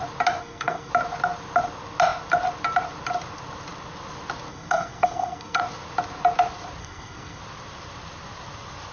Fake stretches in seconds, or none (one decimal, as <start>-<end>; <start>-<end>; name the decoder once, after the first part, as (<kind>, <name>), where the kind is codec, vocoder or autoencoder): 0.4-0.9 (codec, SNAC); 4.5-5.6; 6.8-7.4